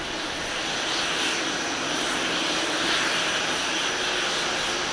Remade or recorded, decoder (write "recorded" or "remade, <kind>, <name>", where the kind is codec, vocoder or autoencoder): recorded